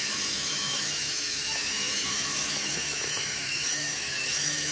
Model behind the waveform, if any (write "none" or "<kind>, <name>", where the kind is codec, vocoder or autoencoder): autoencoder, DAC-VAE